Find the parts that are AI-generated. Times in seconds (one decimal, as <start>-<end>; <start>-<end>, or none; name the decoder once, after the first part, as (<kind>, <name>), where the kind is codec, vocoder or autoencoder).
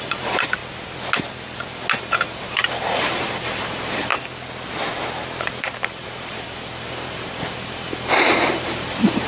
0.0-0.6 (vocoder, BigVGAN v2); 2.0-4.1; 5.6-9.3